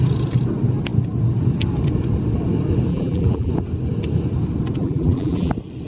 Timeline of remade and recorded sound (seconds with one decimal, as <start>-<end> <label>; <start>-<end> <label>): 0.0-2.9 recorded; 2.9-3.5 remade; 3.5-4.8 recorded; 4.8-5.5 remade; 5.5-5.9 recorded